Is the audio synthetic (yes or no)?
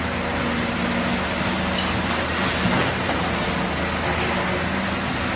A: no